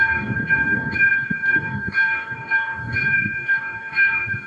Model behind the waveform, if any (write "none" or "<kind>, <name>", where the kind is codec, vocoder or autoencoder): codec, DAC